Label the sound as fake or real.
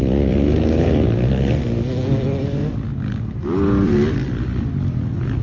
real